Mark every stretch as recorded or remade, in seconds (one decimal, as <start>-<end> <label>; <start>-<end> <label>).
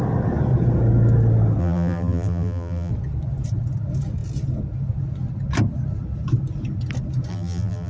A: 0.0-1.6 recorded; 1.6-2.9 remade; 2.9-7.3 recorded; 7.3-7.9 remade